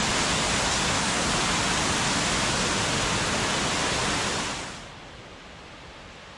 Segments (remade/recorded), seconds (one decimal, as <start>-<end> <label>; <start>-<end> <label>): 0.0-0.7 recorded; 0.7-1.3 remade; 1.3-6.4 recorded